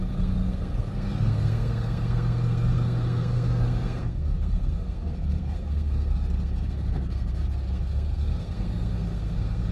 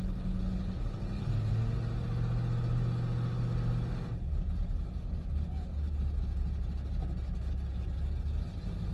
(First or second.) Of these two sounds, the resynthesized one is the first